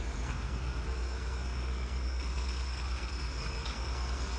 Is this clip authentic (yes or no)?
no